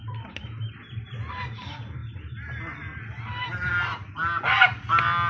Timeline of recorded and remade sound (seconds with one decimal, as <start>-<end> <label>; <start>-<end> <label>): 0.0-5.3 recorded